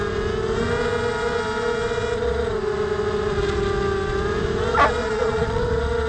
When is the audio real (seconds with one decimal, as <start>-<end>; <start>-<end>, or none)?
0.0-5.0; 5.6-6.1